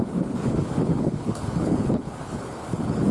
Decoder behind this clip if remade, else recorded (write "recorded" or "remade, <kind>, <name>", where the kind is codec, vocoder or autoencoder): remade, codec, HILCodec